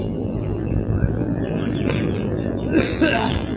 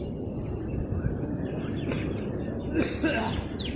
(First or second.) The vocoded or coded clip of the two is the first